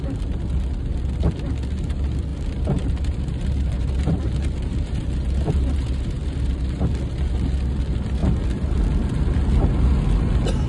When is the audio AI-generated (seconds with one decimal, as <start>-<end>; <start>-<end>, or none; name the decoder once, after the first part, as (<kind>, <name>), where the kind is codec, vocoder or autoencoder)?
2.3-6.5 (vocoder, BigVGAN v2)